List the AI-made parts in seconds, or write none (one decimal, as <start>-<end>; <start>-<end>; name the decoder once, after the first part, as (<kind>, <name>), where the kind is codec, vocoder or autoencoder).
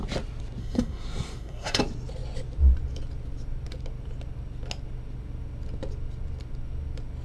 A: 0.6-1.8 (codec, SNAC)